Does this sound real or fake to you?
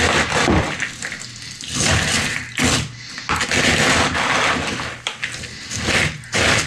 real